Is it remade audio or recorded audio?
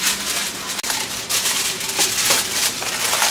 recorded